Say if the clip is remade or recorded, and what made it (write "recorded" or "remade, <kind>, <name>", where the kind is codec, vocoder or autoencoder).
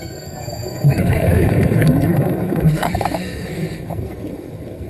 remade, codec, SNAC